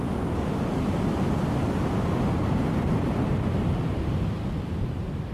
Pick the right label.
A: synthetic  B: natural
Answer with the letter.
B